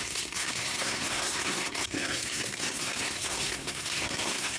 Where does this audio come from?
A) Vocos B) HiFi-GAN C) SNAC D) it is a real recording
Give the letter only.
C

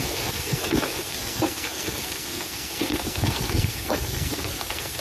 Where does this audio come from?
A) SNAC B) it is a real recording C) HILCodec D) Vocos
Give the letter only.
A